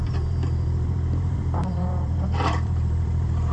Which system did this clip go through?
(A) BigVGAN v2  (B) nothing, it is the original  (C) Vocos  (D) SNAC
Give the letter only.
A